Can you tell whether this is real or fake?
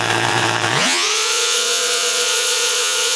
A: fake